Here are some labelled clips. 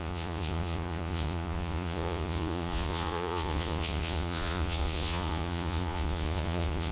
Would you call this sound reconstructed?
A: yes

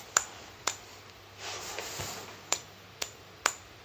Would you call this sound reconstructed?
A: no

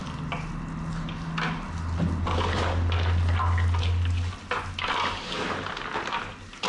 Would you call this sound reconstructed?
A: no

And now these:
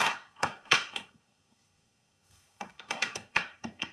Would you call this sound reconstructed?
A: yes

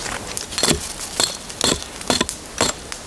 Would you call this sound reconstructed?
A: no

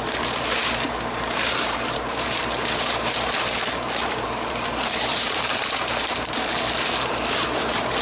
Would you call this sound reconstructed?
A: yes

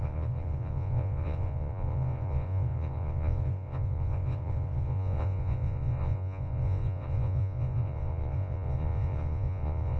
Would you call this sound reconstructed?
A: yes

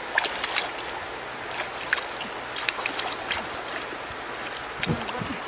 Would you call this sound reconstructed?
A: no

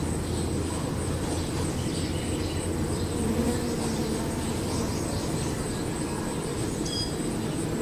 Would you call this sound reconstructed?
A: no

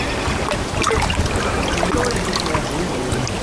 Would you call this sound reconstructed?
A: no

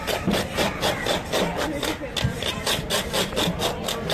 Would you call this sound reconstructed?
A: no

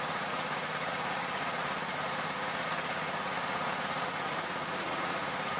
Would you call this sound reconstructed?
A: yes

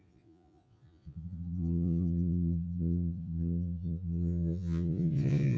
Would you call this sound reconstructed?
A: yes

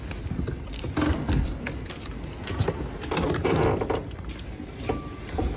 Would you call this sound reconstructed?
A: no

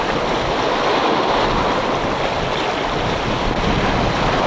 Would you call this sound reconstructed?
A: no